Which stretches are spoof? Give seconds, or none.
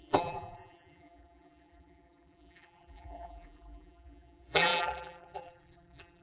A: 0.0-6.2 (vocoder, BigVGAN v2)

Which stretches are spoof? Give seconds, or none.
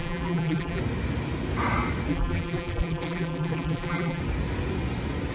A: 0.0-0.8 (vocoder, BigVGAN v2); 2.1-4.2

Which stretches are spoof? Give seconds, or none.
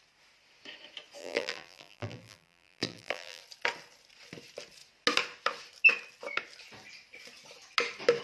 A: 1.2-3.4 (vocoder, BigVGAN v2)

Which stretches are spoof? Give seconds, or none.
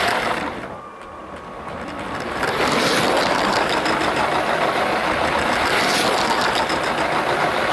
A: none